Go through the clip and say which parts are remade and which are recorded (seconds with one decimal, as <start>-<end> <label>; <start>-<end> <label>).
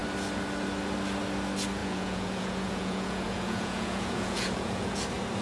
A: 0.0-1.8 recorded; 1.8-5.0 remade; 5.0-5.4 recorded